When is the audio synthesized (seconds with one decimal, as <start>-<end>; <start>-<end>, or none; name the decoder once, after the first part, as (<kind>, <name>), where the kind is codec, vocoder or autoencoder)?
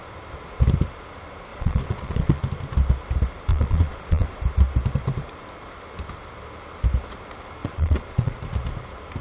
1.5-2.4 (vocoder, Vocos); 3.5-4.4; 7.6-8.4